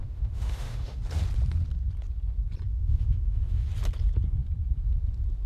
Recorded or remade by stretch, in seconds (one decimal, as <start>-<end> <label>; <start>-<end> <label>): 0.0-1.0 remade; 1.0-2.7 recorded; 2.7-3.7 remade; 3.7-5.5 recorded